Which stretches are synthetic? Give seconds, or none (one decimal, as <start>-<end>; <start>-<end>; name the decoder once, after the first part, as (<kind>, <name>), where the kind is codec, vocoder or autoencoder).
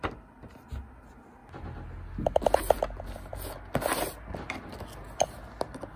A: none